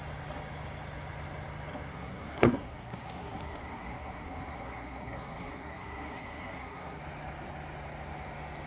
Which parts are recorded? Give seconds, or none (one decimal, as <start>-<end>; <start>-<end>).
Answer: 0.0-1.9; 7.0-8.7